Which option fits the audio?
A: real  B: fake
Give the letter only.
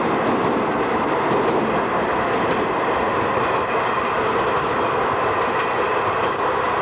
A